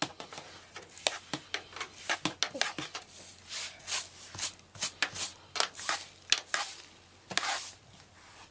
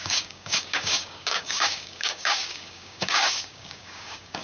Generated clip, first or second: second